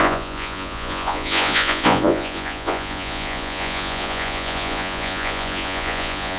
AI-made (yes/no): yes